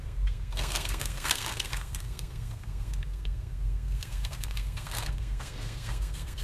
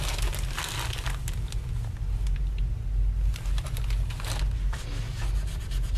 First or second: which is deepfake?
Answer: first